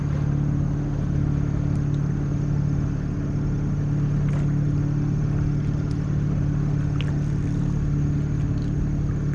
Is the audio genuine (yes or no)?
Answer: yes